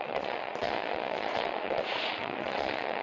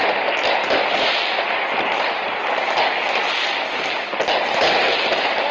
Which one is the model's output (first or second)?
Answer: first